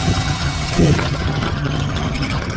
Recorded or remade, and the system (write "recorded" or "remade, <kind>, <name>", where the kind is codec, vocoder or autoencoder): remade, vocoder, HiFi-GAN